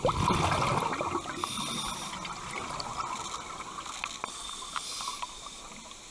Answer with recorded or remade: recorded